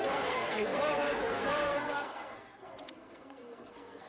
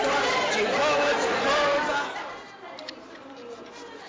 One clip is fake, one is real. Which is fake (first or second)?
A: first